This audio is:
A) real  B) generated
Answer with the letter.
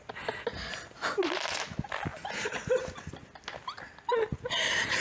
A